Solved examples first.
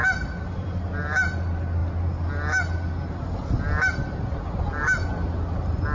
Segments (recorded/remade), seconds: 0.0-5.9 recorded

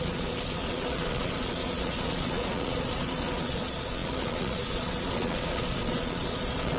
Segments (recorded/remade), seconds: 0.0-6.8 remade

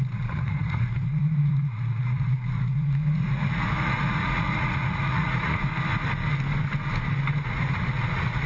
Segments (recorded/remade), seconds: 0.0-5.7 remade; 5.7-7.5 recorded; 7.5-8.5 remade

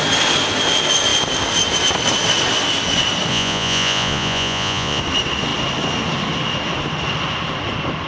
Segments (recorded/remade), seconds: 0.0-3.3 recorded; 3.3-5.0 remade; 5.0-8.1 recorded

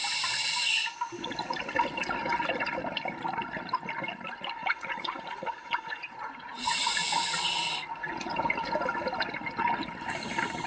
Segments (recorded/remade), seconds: 0.0-4.6 recorded; 4.6-7.5 remade; 7.5-10.7 recorded

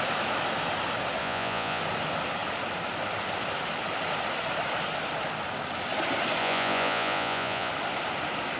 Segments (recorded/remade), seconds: 0.0-1.2 recorded; 1.2-1.8 remade; 1.8-6.4 recorded; 6.4-7.7 remade; 7.7-8.6 recorded

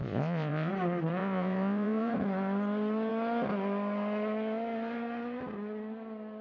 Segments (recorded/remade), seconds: 0.0-0.7 remade; 0.7-1.2 recorded; 1.2-2.1 remade; 2.1-6.4 recorded

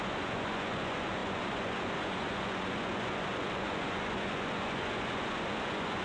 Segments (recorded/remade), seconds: 0.0-6.0 remade